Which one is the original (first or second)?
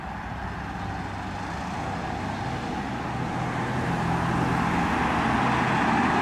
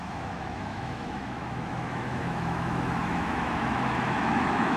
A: first